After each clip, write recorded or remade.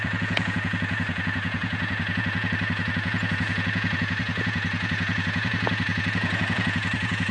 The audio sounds remade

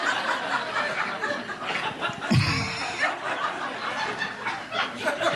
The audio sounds recorded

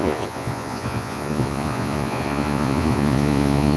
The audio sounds remade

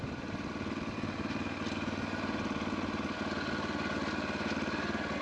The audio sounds recorded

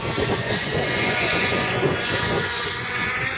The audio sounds remade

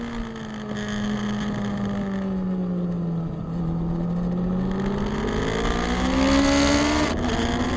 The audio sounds recorded